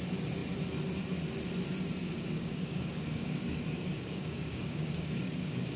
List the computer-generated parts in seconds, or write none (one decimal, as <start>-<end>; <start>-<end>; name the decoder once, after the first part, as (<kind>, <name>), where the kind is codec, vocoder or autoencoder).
2.0-5.8 (codec, DAC)